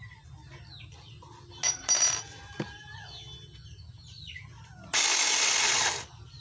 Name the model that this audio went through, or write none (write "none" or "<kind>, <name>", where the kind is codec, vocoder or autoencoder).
none